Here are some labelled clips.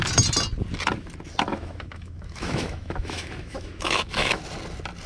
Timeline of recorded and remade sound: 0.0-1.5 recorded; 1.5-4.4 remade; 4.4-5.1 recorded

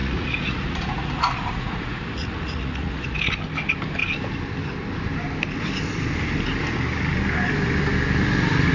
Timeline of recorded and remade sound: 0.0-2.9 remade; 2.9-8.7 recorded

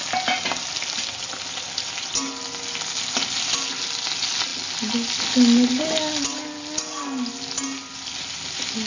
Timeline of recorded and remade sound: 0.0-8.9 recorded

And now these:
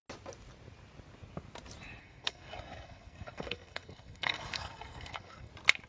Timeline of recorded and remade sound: 0.0-2.0 recorded; 2.0-5.5 remade; 5.5-5.9 recorded

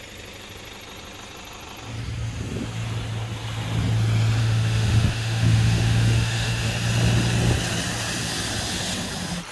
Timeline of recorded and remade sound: 0.0-4.4 recorded; 4.4-6.7 remade; 6.7-9.5 recorded